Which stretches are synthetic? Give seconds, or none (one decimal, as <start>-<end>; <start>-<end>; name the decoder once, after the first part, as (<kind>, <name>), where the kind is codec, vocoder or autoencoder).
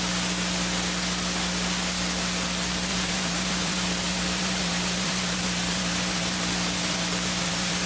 2.9-7.9 (vocoder, BigVGAN v2)